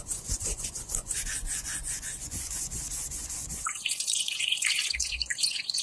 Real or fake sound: fake